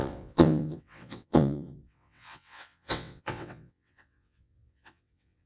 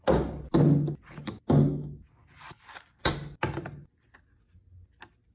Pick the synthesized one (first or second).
first